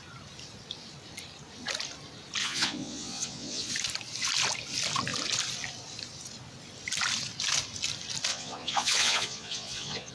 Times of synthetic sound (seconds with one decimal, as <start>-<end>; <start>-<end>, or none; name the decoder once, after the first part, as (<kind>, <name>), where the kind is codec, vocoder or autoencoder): 2.4-3.7 (vocoder, Vocos); 8.3-10.1